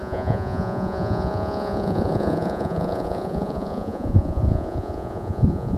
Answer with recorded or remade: remade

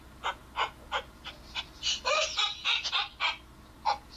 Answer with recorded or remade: recorded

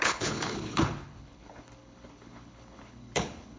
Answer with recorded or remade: remade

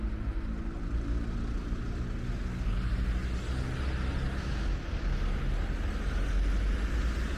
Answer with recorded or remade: recorded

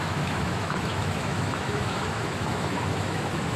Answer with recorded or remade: remade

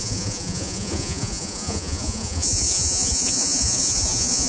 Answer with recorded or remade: remade